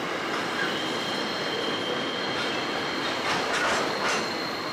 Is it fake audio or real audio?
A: real